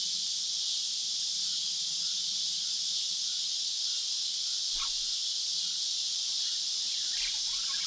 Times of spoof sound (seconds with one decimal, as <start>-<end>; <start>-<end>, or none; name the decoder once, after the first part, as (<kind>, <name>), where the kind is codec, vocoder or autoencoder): 1.0-4.1 (vocoder, Vocos)